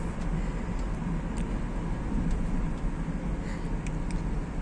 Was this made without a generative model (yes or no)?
yes